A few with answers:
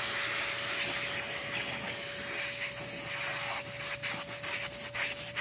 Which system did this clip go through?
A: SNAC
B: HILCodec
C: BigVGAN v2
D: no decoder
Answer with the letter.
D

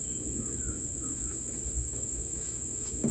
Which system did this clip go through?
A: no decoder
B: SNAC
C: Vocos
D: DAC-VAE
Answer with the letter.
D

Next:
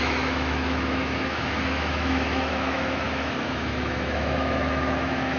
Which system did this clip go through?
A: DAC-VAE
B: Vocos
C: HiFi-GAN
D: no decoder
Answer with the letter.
A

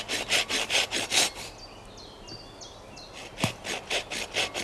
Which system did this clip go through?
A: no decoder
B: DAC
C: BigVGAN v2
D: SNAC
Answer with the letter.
A